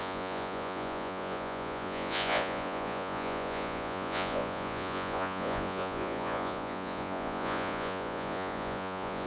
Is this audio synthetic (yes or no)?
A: yes